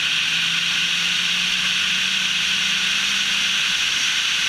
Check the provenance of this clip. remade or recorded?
recorded